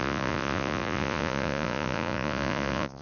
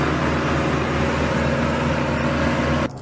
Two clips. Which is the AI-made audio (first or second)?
first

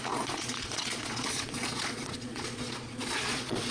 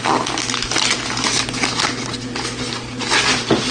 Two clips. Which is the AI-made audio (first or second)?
first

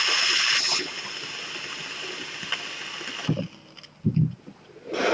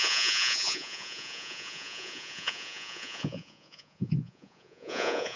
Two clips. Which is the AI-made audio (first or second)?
second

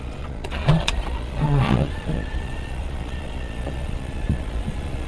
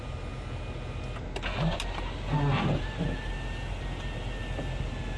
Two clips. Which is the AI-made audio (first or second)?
first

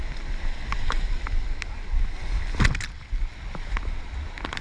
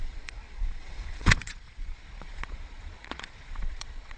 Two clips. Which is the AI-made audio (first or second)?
second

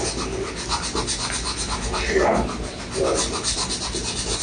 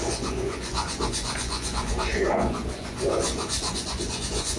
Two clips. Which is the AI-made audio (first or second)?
second